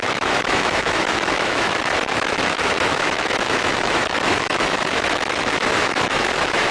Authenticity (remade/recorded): remade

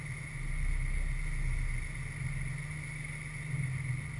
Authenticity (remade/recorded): recorded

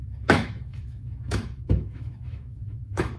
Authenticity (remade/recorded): remade